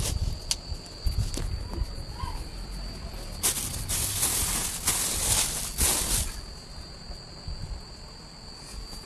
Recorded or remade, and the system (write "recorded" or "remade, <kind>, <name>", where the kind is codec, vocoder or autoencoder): recorded